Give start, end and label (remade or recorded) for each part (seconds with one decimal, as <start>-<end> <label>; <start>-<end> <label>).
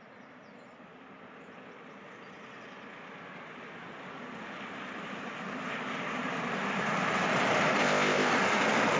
0.0-7.8 recorded; 7.8-8.3 remade; 8.3-9.0 recorded